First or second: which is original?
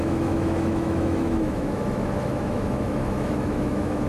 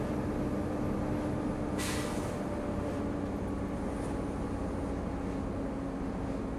second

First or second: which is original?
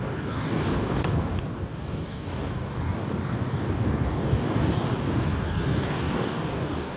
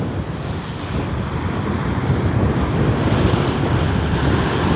second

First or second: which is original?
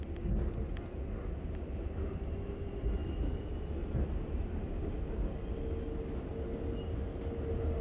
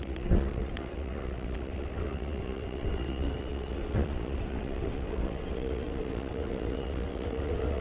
first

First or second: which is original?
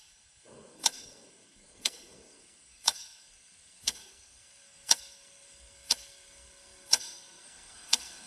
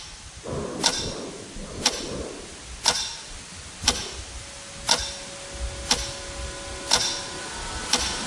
second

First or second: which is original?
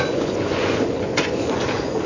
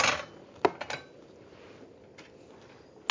second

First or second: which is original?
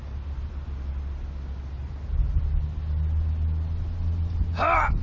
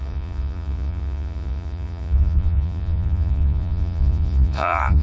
first